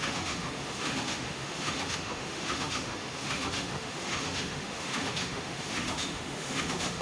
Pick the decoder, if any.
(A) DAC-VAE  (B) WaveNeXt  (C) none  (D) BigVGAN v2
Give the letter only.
A